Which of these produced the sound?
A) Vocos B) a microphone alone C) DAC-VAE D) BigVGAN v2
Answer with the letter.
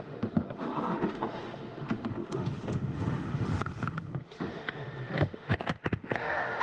C